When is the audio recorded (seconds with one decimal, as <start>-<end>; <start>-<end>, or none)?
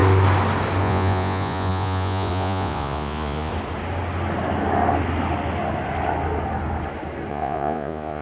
0.0-0.8; 3.5-7.3